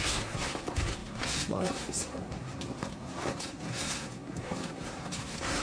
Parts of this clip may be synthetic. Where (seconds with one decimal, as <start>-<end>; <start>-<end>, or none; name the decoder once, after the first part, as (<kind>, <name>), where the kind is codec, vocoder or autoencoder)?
0.0-5.6 (codec, SNAC)